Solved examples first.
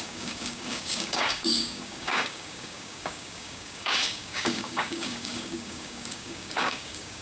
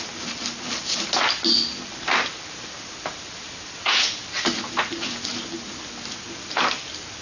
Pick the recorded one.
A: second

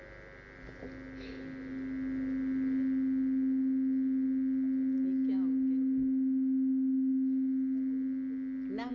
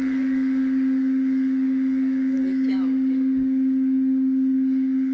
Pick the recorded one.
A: first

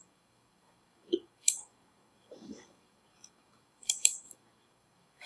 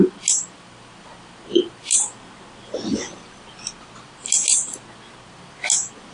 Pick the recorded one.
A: second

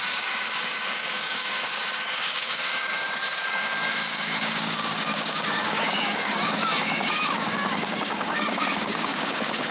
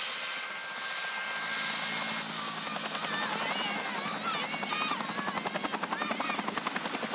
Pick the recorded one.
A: second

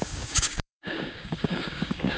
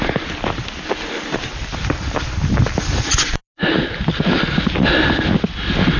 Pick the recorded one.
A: second